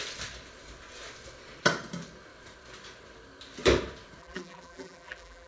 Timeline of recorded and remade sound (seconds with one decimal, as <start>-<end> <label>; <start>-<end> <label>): 0.0-4.2 recorded; 4.2-5.5 remade